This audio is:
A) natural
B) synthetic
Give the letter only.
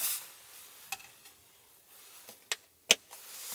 A